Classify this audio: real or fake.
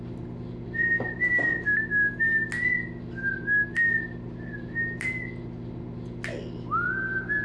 real